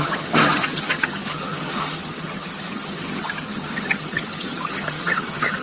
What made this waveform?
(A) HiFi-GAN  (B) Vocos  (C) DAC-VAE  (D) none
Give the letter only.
A